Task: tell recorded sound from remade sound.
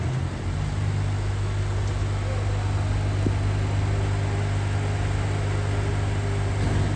recorded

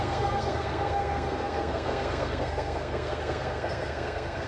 remade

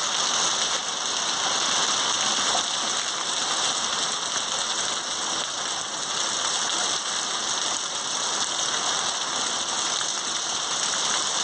recorded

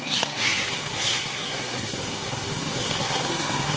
remade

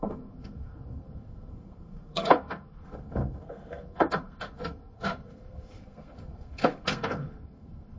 remade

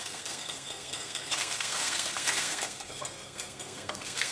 remade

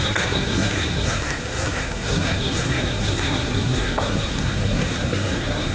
remade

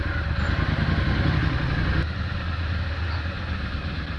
recorded